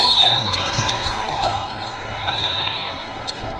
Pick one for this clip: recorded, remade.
remade